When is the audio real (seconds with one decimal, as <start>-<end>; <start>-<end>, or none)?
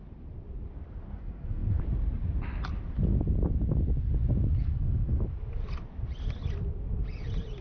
0.0-1.1; 1.8-4.6; 5.2-7.6